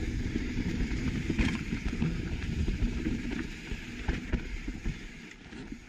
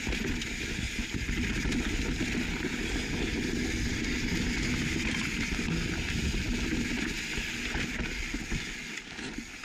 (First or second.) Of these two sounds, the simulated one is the first